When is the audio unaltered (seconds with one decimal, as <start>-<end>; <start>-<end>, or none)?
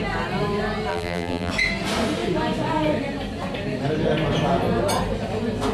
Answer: 0.0-0.9; 1.5-5.7